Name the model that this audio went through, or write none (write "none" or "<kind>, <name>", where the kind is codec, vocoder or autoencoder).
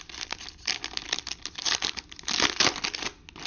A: none